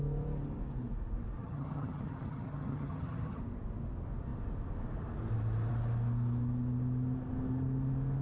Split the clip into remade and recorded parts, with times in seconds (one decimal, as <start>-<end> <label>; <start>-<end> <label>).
0.0-1.4 recorded; 1.4-3.4 remade; 3.4-8.2 recorded